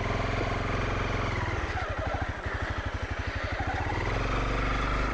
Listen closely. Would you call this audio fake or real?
real